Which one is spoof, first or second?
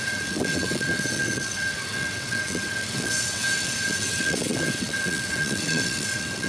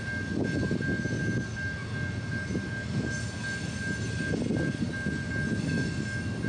first